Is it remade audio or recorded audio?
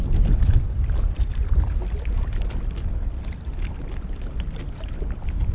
recorded